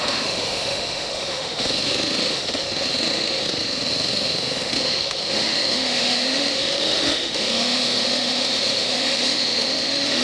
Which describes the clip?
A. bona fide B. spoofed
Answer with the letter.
B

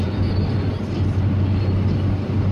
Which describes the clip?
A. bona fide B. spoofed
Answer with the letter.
A